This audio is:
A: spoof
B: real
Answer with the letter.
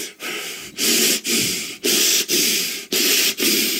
B